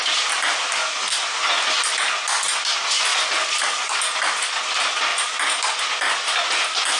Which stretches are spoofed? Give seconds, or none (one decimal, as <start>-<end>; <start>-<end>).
0.8-1.3; 3.1-3.9